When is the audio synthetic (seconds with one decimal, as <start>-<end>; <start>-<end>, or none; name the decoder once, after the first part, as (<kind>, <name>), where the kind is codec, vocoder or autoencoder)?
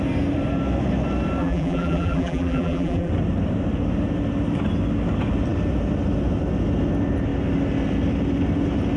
1.4-3.1 (vocoder, BigVGAN v2)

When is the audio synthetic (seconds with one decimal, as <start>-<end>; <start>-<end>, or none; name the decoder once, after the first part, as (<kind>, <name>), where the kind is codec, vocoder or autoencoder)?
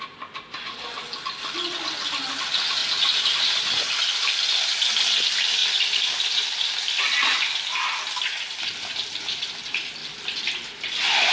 5.6-9.4 (vocoder, BigVGAN v2); 10.0-11.3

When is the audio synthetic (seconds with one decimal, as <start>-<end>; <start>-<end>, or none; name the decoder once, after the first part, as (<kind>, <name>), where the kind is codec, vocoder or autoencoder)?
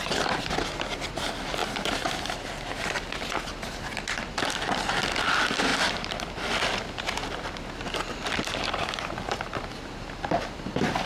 1.6-4.4 (vocoder, BigVGAN v2); 5.7-11.1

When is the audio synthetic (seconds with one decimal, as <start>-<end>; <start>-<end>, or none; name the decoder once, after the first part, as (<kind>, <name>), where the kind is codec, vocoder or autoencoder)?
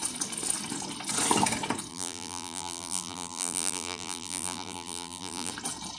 1.9-5.5 (vocoder, BigVGAN v2)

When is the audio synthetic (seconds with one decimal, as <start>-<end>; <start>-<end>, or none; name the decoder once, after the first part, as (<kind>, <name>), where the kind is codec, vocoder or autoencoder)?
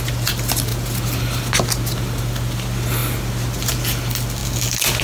none